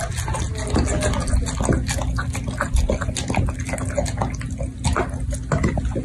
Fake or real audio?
real